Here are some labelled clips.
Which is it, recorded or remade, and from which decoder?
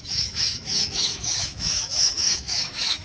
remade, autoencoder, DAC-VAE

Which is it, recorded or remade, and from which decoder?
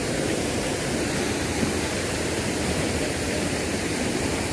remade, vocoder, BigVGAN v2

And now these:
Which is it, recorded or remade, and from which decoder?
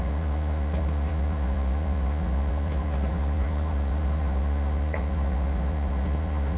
remade, vocoder, Vocos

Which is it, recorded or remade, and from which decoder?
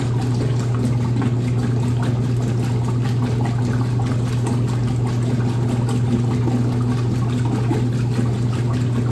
recorded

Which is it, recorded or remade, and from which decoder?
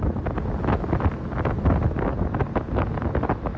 recorded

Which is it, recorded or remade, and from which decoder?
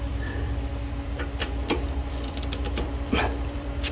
remade, vocoder, BigVGAN v2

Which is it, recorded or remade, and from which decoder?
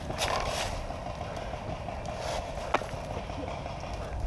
recorded